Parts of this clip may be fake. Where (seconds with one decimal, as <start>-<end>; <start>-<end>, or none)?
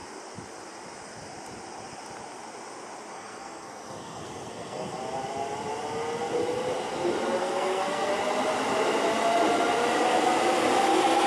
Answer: 3.1-5.0; 7.4-8.1